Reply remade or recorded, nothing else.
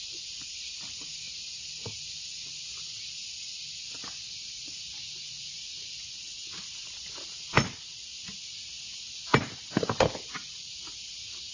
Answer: recorded